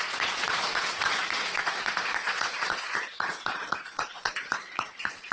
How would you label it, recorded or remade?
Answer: remade